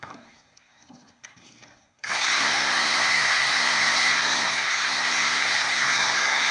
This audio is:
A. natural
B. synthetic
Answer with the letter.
B